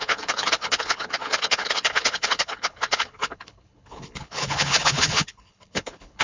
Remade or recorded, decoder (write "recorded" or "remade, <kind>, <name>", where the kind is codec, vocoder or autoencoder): remade, codec, HILCodec